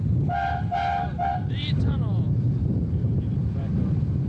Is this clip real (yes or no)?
no